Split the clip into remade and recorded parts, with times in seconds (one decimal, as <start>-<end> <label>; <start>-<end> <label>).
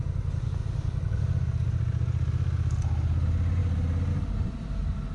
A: 0.0-5.1 recorded